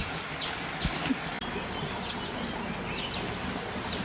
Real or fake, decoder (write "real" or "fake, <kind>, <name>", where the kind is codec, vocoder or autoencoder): real